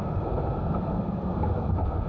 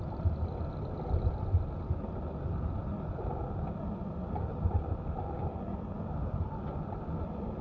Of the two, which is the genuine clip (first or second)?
second